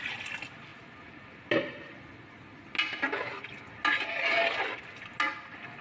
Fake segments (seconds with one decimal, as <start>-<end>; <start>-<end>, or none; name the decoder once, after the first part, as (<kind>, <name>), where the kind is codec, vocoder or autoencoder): none